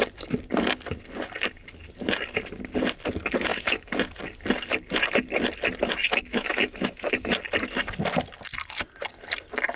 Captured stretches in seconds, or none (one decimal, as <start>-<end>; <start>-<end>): 0.0-3.5; 4.0-6.0; 7.3-9.8